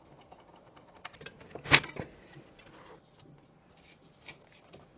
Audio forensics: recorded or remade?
recorded